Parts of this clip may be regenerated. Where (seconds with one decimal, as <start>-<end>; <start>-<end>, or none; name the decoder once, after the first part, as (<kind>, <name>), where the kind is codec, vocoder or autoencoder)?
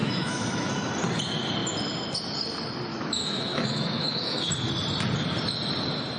0.0-0.7 (autoencoder, DAC-VAE); 2.9-4.5